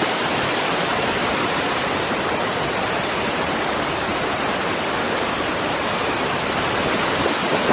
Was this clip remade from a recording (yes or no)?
no